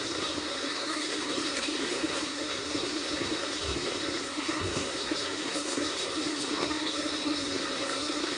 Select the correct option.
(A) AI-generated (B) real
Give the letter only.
A